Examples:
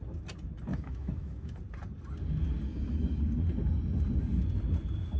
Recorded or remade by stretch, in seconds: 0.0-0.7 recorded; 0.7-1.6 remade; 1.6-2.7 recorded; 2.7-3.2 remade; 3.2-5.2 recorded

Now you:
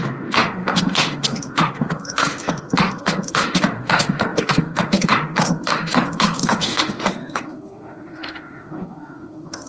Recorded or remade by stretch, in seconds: 0.0-9.7 remade

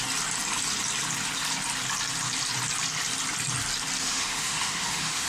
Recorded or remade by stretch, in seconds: 0.0-4.0 recorded; 4.0-5.3 remade

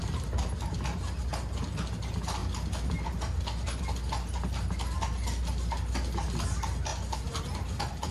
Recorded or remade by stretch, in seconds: 0.0-8.1 recorded

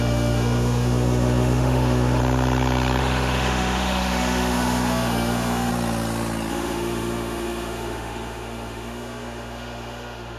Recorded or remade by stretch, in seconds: 0.0-2.2 remade; 2.2-3.0 recorded; 3.0-5.7 remade; 5.7-6.5 recorded; 6.5-10.4 remade

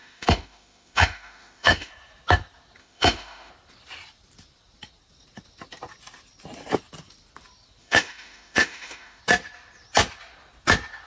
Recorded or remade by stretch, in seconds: 0.0-1.9 remade; 1.9-2.8 recorded; 2.8-3.5 remade; 3.5-7.8 recorded; 7.8-9.2 remade; 9.2-11.1 recorded